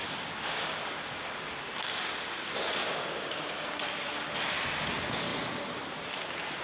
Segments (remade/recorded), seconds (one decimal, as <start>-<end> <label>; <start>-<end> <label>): 0.0-1.0 remade; 1.0-2.8 recorded; 2.8-3.5 remade; 3.5-6.6 recorded